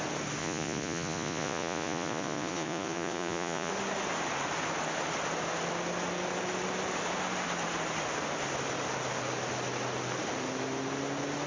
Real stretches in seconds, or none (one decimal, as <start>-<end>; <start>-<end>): 0.0-0.4; 3.7-11.5